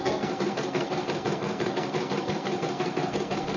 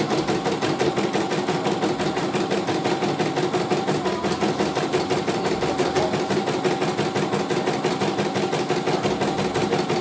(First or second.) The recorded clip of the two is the second